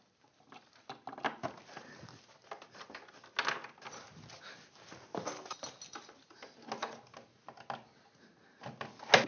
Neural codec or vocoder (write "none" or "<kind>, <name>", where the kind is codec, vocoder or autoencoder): none